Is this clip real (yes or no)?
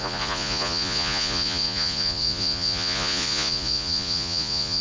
no